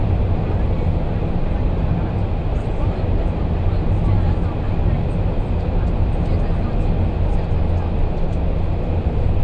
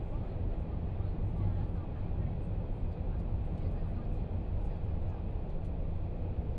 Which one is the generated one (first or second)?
second